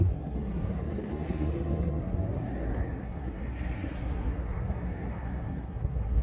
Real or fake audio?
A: fake